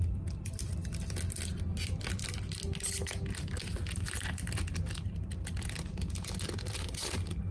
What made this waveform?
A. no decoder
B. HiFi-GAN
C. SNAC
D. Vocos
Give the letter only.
A